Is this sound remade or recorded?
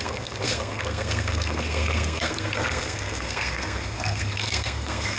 remade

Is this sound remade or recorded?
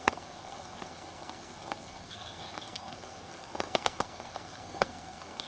remade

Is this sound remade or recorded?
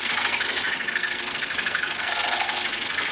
remade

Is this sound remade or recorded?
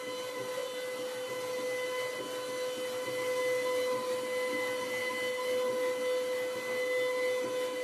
recorded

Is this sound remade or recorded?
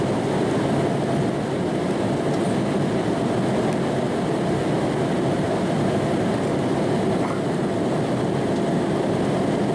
recorded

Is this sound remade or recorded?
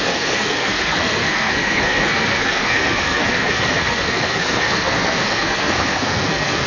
remade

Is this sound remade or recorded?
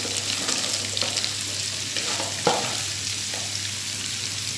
recorded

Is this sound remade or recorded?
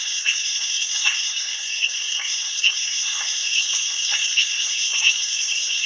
remade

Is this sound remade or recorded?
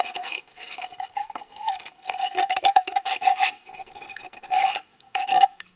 remade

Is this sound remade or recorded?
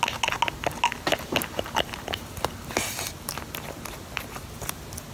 recorded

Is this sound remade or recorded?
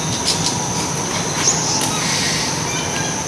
recorded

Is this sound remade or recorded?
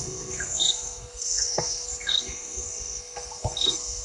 remade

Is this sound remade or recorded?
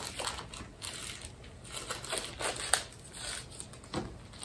recorded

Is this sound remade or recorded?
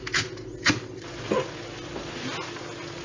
recorded